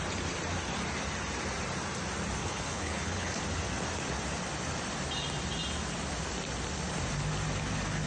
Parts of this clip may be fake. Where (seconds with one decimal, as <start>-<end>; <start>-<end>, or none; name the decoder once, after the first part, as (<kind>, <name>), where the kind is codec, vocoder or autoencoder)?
2.4-3.4 (codec, HILCodec)